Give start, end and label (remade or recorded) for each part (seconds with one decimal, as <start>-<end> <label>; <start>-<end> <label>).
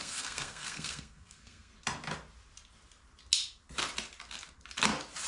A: 0.0-1.7 remade; 1.7-5.3 recorded